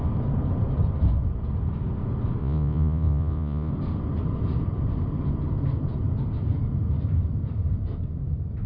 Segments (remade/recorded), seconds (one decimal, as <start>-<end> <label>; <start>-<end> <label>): 0.0-2.4 recorded; 2.4-3.7 remade; 3.7-8.7 recorded